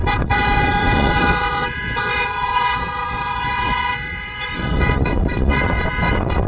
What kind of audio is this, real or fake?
fake